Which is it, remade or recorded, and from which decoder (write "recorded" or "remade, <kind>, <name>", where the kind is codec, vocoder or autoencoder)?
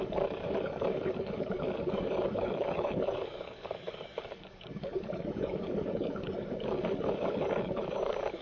remade, codec, DAC